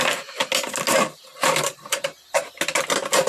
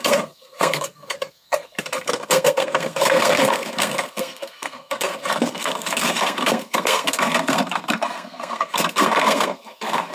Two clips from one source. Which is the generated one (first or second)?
second